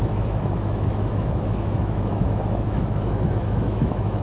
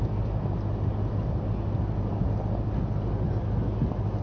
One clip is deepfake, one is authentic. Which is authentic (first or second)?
second